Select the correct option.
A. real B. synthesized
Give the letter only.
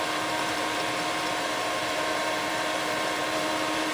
B